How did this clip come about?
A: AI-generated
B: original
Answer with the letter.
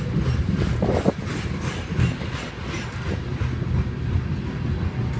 B